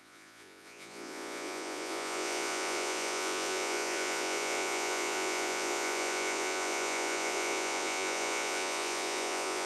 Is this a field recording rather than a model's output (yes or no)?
no